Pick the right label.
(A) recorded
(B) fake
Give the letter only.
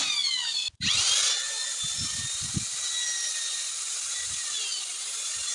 A